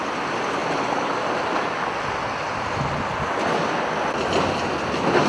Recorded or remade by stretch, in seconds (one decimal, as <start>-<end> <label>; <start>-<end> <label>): 0.0-5.3 recorded